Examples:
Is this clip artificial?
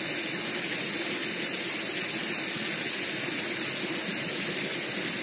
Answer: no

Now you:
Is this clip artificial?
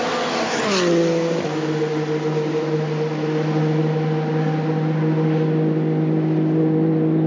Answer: no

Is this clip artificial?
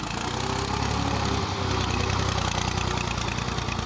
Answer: no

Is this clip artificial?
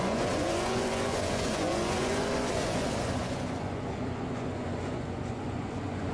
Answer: yes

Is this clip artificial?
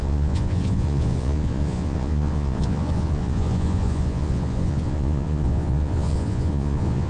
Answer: yes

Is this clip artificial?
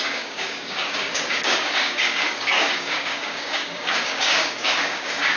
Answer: yes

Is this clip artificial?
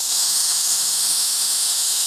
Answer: yes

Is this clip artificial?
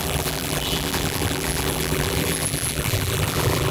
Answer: yes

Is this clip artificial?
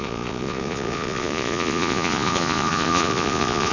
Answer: yes